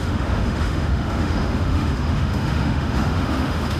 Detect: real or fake fake